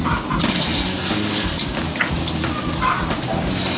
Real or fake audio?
real